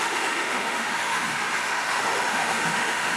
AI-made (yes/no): yes